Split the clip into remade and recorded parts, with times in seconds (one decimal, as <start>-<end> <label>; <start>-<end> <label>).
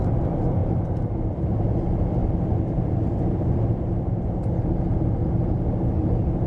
0.0-0.6 recorded; 0.6-1.1 remade; 1.1-6.5 recorded